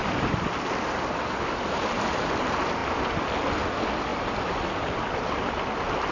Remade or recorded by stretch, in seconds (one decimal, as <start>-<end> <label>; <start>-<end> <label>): 0.0-6.1 recorded